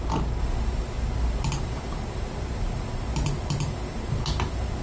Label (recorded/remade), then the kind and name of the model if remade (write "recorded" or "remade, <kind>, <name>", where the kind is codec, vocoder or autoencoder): recorded